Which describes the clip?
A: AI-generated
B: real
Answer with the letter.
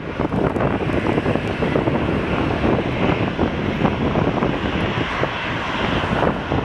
B